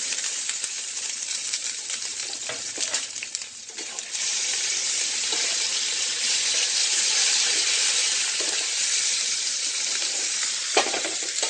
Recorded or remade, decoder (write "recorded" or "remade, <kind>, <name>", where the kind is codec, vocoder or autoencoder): remade, vocoder, BigVGAN v2